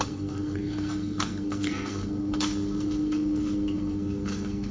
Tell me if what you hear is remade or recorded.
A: remade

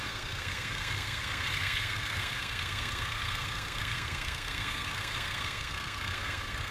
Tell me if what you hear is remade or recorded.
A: remade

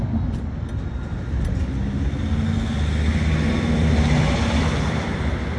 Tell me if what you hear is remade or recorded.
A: recorded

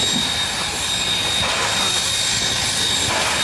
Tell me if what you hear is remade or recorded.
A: recorded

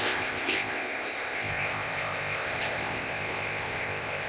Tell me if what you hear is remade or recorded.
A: remade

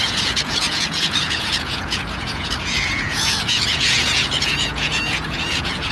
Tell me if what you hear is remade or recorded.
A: remade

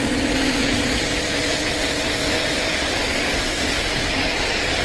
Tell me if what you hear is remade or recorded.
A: recorded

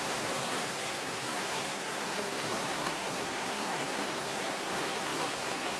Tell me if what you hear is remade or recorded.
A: remade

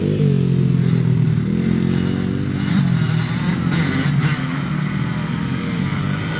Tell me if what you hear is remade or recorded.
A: recorded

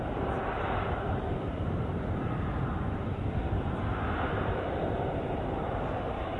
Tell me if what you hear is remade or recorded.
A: remade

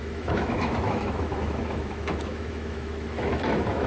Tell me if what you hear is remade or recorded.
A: remade